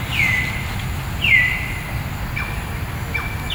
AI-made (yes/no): no